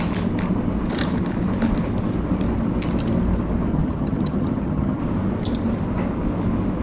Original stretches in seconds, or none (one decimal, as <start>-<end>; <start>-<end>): 0.0-3.7; 5.0-6.8